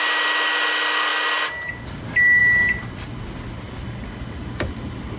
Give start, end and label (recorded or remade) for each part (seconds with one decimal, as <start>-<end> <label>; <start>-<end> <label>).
0.0-5.2 recorded